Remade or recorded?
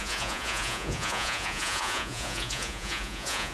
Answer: remade